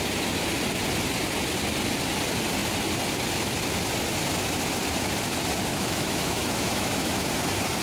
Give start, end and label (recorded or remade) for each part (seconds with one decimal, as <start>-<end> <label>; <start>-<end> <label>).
0.0-5.7 recorded; 5.7-7.3 remade; 7.3-7.8 recorded